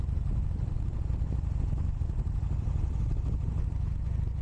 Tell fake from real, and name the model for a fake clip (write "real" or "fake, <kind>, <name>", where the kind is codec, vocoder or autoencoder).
real